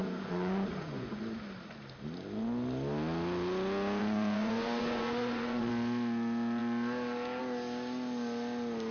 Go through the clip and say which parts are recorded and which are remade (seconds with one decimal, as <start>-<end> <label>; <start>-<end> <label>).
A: 0.0-1.2 remade; 1.2-4.0 recorded; 4.0-5.7 remade; 5.7-8.9 recorded

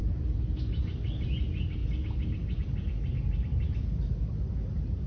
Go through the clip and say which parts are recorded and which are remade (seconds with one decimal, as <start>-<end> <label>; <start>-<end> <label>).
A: 0.0-5.1 recorded